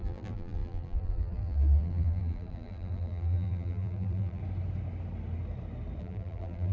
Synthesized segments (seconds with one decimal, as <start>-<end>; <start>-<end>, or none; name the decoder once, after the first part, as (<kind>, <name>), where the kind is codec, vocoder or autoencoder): 0.0-4.4 (vocoder, BigVGAN v2); 6.0-6.7